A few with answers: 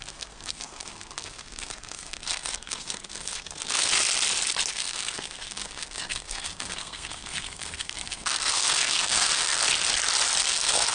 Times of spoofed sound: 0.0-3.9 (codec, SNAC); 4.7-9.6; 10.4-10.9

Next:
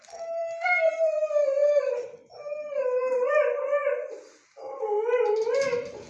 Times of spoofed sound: 0.4-1.1 (vocoder, BigVGAN v2); 1.6-3.3; 3.8-4.7

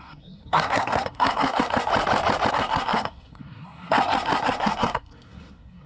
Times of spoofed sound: 0.0-1.9 (codec, SNAC); 2.5-5.9

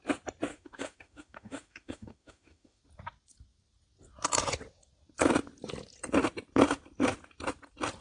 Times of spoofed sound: 0.5-2.8 (autoencoder, DAC-VAE)

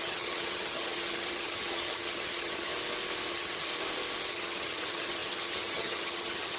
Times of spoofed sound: 0.0-2.7 (vocoder, HiFi-GAN); 3.3-3.7; 4.3-6.6

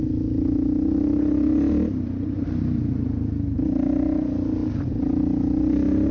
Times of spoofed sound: none

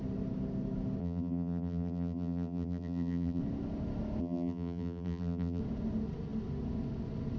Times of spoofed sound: 1.0-3.4 (vocoder, BigVGAN v2); 4.2-5.6